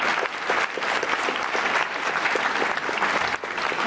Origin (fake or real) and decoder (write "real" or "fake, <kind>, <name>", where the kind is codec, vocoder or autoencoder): real